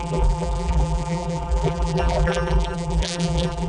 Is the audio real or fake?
fake